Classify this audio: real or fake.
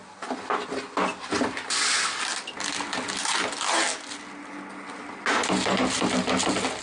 real